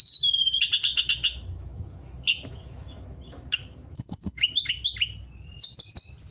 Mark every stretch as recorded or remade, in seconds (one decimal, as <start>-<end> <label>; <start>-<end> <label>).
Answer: 0.0-0.9 recorded; 0.9-4.7 remade; 4.7-6.3 recorded